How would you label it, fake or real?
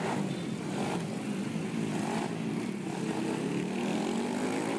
real